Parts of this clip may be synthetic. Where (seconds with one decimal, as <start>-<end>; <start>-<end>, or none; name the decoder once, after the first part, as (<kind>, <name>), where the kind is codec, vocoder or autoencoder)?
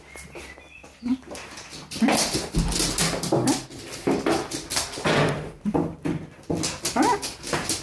0.8-2.5 (vocoder, BigVGAN v2); 3.0-6.5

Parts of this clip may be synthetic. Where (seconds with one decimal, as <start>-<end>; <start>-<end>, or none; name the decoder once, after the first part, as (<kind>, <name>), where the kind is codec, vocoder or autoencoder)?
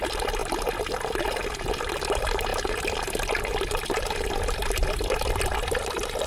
0.0-0.4 (vocoder, BigVGAN v2); 1.8-2.5; 3.5-4.6; 5.8-6.3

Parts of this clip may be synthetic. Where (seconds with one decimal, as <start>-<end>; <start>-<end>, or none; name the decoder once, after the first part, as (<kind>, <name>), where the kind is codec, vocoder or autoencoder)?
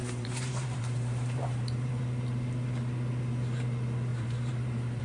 0.0-2.0 (vocoder, BigVGAN v2); 4.1-5.0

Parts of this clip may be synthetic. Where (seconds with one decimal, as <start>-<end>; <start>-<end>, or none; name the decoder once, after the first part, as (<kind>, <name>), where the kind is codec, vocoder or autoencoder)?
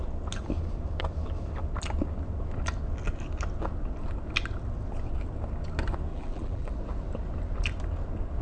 6.1-6.7 (vocoder, BigVGAN v2)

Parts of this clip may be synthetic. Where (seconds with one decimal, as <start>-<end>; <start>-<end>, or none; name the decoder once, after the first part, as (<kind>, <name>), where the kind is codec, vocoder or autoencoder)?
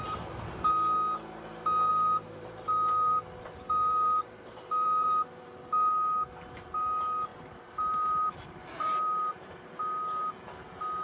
1.9-5.5 (vocoder, BigVGAN v2); 7.3-9.7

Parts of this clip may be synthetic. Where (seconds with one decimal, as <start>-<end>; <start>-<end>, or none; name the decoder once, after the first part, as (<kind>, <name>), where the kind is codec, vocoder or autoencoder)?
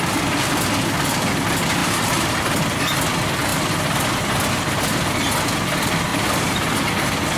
1.8-2.6 (vocoder, BigVGAN v2); 3.5-4.2; 6.1-6.9